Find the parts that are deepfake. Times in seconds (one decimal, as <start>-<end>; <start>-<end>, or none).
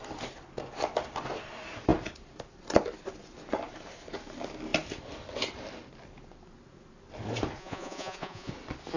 7.6-8.5